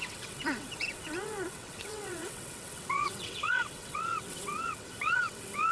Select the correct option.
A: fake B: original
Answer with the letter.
A